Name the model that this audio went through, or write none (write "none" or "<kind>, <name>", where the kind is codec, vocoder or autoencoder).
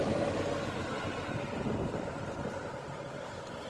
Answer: none